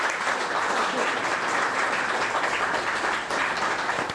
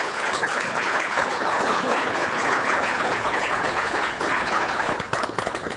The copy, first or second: second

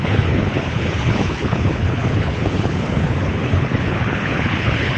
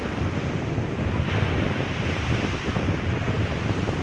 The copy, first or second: first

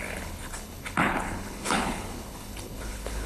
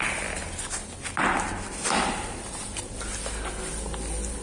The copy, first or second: first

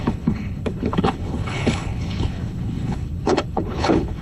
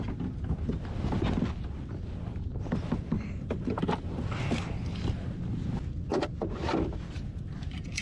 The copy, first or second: first